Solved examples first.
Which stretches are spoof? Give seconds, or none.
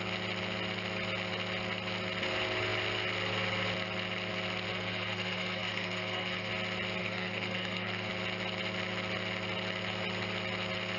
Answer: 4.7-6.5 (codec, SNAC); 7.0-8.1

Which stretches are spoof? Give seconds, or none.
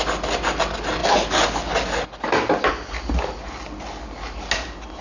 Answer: none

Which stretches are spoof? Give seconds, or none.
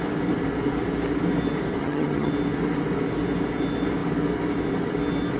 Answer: 1.8-2.3 (vocoder, HiFi-GAN)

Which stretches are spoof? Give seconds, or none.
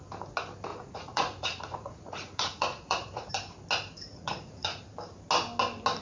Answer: 0.7-3.3 (vocoder, Vocos); 4.1-4.8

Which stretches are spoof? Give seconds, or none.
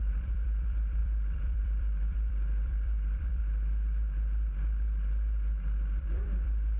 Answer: 0.0-3.4 (vocoder, BigVGAN v2); 6.0-6.8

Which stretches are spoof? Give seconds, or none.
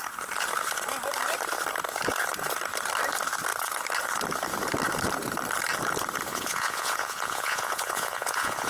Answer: 6.3-8.7 (vocoder, Vocos)